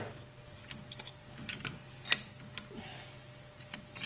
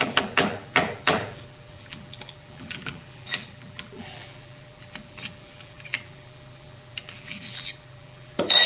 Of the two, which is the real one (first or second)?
first